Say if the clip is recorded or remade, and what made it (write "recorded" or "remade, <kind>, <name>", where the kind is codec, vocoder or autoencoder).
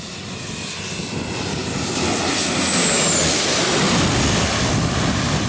recorded